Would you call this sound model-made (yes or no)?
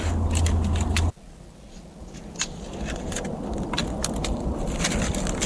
no